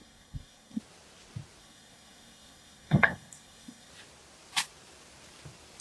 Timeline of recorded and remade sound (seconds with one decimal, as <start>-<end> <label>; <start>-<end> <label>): 0.0-0.8 remade; 0.8-1.6 recorded; 1.6-3.9 remade; 3.9-5.8 recorded